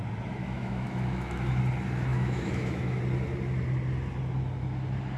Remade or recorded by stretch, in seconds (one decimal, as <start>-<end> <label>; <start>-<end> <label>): 0.0-0.4 recorded; 0.4-1.6 remade; 1.6-2.1 recorded; 2.1-3.0 remade; 3.0-5.2 recorded